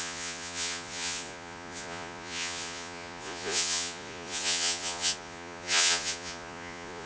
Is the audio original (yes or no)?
no